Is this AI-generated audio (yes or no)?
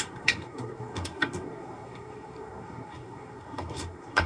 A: yes